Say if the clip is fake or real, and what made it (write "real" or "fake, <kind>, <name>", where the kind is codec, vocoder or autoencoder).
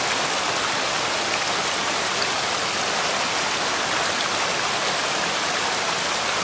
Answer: real